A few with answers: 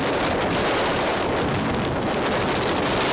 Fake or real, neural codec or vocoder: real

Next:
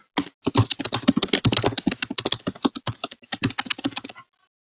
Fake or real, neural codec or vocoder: real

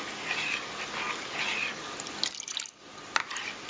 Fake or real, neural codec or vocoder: real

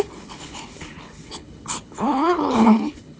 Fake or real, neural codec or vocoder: fake, codec, HILCodec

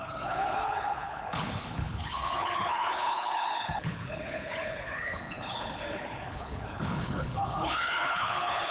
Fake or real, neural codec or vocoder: fake, codec, HILCodec